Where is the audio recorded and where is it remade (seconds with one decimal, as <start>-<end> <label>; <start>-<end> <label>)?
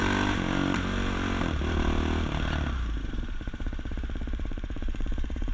0.0-3.0 recorded; 3.0-5.5 remade